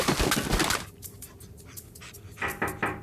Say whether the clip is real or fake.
real